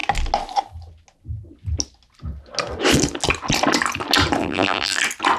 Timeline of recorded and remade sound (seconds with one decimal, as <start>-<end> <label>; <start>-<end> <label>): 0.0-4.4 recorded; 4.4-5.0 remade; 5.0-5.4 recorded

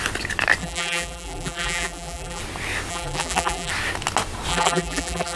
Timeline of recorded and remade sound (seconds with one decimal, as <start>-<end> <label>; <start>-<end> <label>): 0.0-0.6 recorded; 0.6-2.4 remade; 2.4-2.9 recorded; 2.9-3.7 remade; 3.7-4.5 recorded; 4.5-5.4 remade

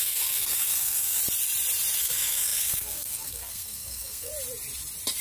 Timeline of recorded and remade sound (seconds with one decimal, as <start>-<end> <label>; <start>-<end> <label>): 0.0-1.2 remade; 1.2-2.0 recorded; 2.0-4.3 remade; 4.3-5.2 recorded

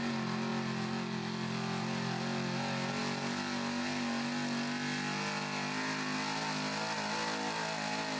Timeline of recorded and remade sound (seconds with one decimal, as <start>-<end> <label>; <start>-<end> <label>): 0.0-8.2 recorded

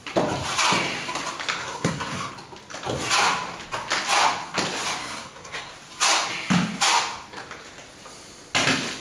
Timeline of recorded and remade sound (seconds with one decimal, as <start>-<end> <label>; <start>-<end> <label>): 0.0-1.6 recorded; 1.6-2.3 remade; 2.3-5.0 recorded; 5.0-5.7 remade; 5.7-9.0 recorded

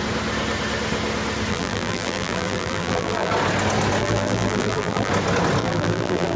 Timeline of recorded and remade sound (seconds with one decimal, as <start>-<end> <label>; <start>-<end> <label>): 0.0-1.5 recorded; 1.5-3.3 remade; 3.3-4.0 recorded; 4.0-5.1 remade; 5.1-5.6 recorded; 5.6-6.4 remade